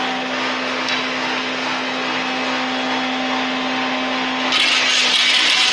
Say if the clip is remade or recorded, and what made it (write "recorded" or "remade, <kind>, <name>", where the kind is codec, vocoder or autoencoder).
recorded